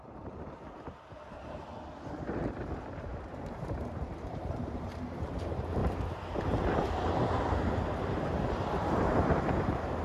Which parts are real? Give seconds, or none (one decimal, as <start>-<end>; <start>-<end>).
1.6-3.1; 5.8-8.5